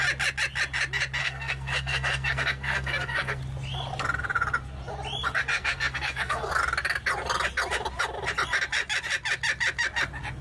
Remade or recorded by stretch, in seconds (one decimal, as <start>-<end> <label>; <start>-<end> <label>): 0.0-1.2 recorded; 1.2-3.4 remade; 3.4-5.5 recorded; 5.5-6.5 remade; 6.5-10.4 recorded